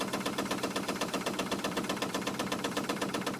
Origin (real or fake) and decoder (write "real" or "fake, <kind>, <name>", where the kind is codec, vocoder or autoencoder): fake, vocoder, BigVGAN v2